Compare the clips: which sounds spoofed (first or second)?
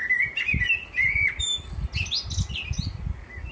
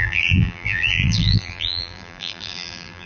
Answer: second